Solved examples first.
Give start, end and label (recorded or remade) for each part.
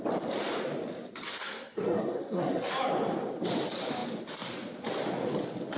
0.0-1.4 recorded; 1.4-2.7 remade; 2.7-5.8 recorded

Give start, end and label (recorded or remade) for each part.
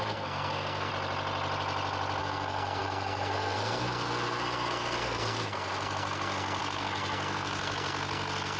0.0-0.9 remade; 0.9-2.2 recorded; 2.2-8.6 remade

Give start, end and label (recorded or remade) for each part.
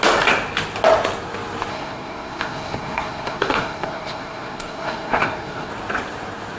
0.0-1.7 recorded; 1.7-5.7 remade; 5.7-6.6 recorded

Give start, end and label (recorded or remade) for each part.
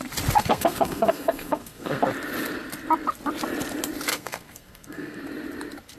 0.0-0.4 recorded; 0.4-2.0 remade; 2.0-4.1 recorded; 4.1-5.2 remade; 5.2-6.0 recorded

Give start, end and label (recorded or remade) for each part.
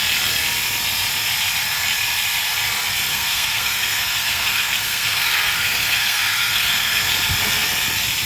0.0-3.1 recorded; 3.1-7.1 remade; 7.1-8.3 recorded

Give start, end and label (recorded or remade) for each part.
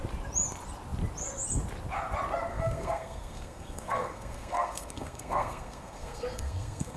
0.0-2.5 recorded; 2.5-7.0 remade